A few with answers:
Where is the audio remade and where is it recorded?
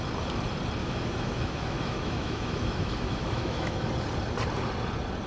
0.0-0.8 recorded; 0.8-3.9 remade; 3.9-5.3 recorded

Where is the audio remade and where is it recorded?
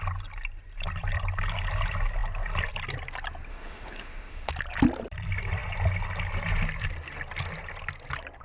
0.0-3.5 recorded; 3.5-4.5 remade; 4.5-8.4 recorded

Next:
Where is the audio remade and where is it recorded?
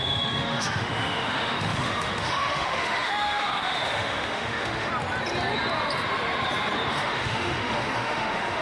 0.0-4.9 remade; 4.9-6.9 recorded; 6.9-8.6 remade